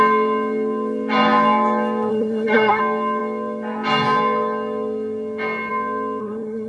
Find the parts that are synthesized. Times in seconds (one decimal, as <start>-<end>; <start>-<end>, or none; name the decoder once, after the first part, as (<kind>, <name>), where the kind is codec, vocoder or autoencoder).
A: 2.1-2.8 (codec, SNAC); 6.2-6.7